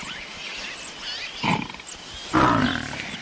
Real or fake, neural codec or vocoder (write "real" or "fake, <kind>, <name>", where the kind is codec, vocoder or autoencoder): real